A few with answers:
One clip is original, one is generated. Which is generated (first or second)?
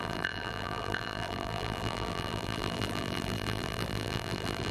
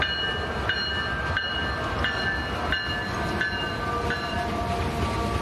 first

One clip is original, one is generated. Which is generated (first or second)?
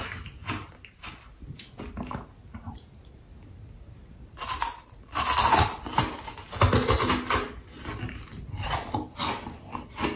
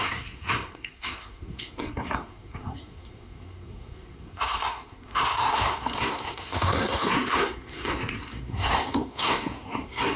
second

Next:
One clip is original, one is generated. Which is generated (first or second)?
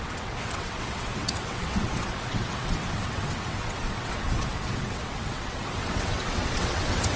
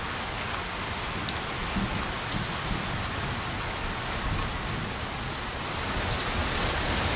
first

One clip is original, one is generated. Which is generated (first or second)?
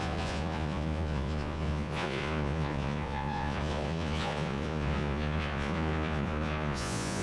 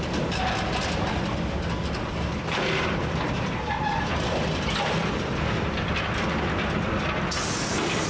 first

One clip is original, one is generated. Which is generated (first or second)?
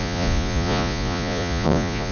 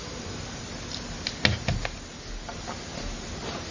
first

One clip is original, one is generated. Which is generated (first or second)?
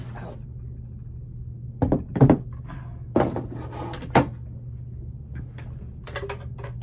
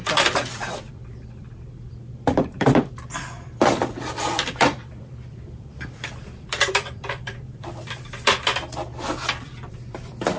second